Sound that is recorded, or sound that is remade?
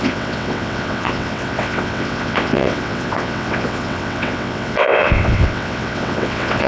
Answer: remade